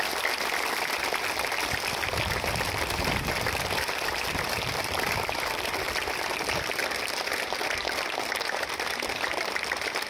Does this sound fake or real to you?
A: fake